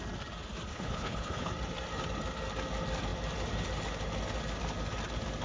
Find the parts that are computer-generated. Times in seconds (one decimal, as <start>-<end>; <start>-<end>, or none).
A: 0.7-1.5